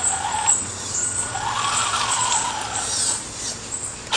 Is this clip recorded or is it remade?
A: recorded